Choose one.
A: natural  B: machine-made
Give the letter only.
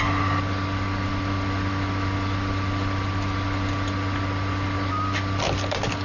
A